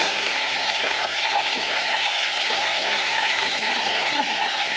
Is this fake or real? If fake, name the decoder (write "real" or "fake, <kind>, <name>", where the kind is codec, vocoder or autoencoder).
fake, codec, SNAC